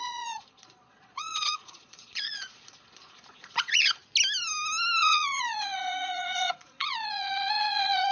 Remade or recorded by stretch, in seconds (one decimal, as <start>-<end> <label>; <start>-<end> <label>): 0.0-4.0 remade; 4.0-5.0 recorded; 5.0-8.1 remade